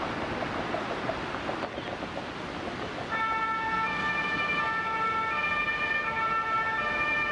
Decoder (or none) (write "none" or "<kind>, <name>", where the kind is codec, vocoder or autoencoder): none